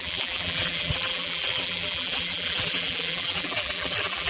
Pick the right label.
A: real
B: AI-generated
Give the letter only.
B